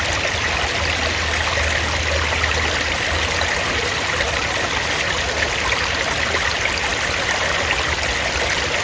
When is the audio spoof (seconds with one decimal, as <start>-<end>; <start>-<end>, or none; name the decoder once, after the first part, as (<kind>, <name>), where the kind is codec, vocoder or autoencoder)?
none